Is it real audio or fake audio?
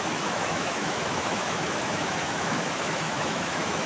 fake